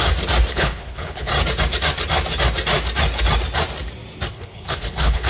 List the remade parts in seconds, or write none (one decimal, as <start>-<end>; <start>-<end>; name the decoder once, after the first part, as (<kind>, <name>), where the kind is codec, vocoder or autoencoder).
0.5-1.3 (codec, HILCodec); 4.3-5.3